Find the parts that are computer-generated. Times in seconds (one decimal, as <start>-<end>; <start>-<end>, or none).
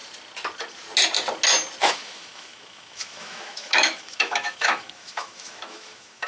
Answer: 1.8-6.3